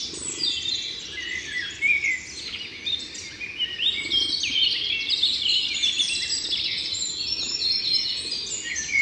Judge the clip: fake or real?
real